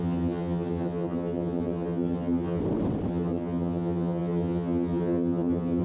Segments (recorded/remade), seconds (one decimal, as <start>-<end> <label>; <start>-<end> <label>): 0.0-2.6 remade; 2.6-3.1 recorded; 3.1-5.8 remade